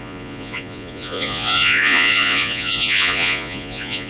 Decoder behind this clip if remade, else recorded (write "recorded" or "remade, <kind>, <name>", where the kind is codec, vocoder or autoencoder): remade, vocoder, Vocos